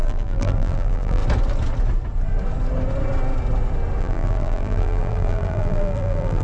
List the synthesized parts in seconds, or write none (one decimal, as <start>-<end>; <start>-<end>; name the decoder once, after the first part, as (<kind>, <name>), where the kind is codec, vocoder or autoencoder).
0.0-1.2 (vocoder, BigVGAN v2); 4.0-6.4